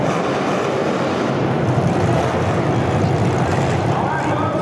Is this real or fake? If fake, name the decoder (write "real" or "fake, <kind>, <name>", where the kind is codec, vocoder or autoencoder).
fake, vocoder, BigVGAN v2